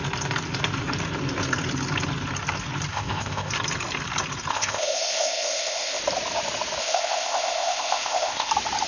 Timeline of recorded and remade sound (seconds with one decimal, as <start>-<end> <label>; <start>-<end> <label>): 0.0-2.9 recorded; 2.9-3.5 remade; 3.5-4.5 recorded; 4.5-6.0 remade; 6.0-6.8 recorded; 6.8-8.5 remade; 8.5-8.9 recorded